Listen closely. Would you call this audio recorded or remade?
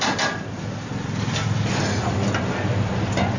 recorded